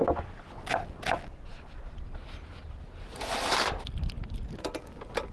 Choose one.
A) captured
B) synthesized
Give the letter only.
A